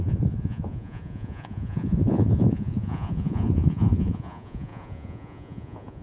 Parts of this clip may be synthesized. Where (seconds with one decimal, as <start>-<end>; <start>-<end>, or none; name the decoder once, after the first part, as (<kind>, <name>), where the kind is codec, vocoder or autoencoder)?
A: 0.0-6.0 (vocoder, Vocos)